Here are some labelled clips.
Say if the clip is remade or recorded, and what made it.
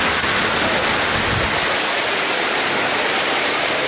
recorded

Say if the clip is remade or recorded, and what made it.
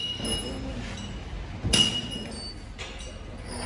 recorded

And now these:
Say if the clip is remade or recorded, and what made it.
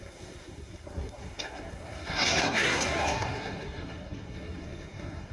remade, codec, SNAC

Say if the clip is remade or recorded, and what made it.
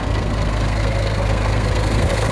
remade, codec, SNAC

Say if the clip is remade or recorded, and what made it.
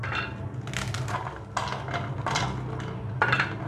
recorded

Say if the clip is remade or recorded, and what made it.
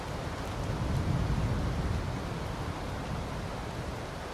recorded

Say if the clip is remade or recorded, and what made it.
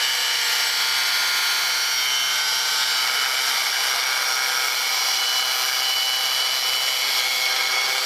recorded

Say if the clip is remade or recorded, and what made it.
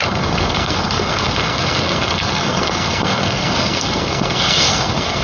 remade, codec, SNAC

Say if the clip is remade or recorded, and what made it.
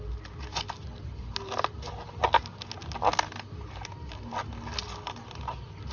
recorded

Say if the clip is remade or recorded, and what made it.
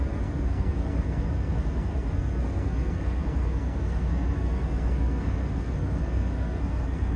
remade, codec, SNAC